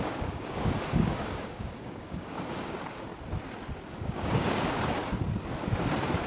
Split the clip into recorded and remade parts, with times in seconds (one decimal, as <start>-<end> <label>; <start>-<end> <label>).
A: 0.0-3.1 remade; 3.1-3.9 recorded; 3.9-5.0 remade; 5.0-6.3 recorded